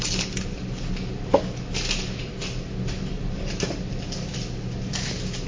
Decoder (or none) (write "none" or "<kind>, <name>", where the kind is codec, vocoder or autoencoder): none